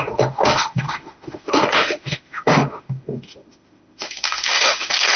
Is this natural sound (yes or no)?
no